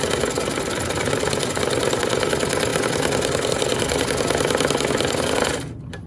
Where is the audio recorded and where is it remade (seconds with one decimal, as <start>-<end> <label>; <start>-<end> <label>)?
0.0-6.1 recorded